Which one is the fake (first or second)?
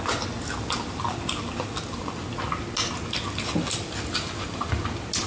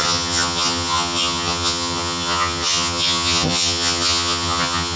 second